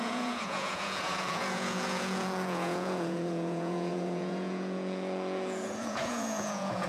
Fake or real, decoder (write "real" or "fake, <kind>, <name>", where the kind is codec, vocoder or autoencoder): fake, vocoder, Vocos